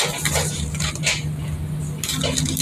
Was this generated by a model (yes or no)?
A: no